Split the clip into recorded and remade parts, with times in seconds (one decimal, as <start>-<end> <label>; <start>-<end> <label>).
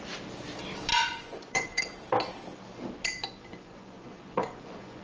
0.0-0.9 recorded; 0.9-1.8 remade; 1.8-3.2 recorded; 3.2-5.0 remade